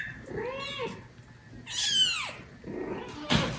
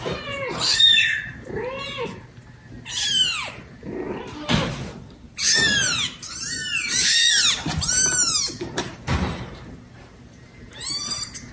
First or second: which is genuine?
first